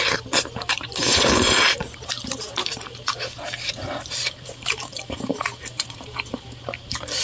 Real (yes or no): no